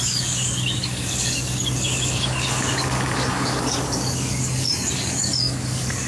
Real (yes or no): no